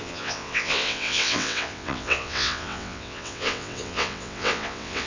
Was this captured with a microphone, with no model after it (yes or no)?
no